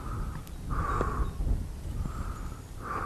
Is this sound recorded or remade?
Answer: recorded